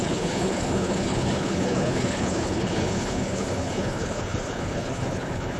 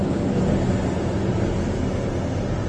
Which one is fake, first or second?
first